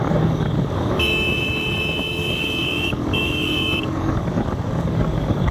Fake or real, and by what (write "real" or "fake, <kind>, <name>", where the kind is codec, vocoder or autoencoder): fake, codec, DAC